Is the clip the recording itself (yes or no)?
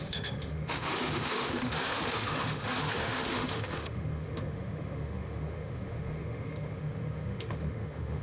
no